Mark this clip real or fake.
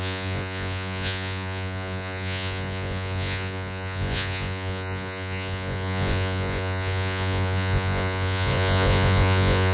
fake